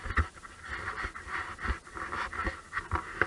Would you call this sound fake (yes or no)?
no